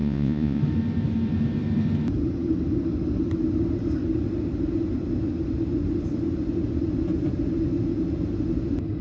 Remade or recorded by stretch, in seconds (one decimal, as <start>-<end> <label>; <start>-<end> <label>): 0.0-0.6 remade; 0.6-9.0 recorded